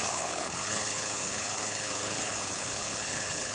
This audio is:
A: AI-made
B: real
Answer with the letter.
A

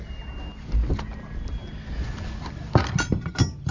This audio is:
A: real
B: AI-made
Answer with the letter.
A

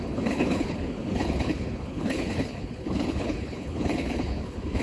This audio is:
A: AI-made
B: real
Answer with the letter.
A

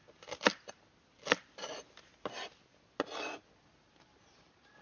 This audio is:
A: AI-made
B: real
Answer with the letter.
B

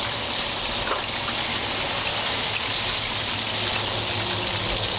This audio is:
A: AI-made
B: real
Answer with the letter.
B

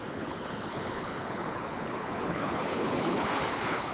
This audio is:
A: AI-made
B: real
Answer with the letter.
A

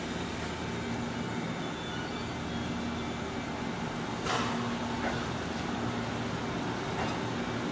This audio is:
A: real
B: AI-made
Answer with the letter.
A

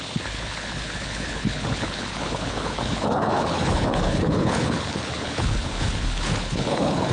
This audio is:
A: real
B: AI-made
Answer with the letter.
B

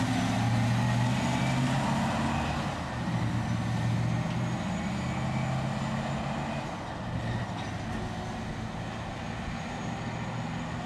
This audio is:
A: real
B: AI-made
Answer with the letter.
A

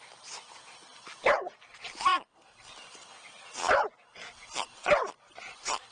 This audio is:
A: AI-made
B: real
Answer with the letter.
B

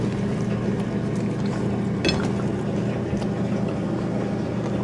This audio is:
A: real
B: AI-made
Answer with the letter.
A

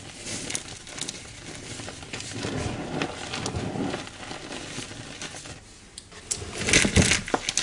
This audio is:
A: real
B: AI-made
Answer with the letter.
A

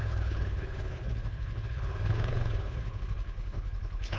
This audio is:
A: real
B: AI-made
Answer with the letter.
B